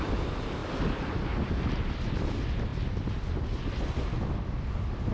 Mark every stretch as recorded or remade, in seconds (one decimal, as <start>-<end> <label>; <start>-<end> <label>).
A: 0.0-5.1 recorded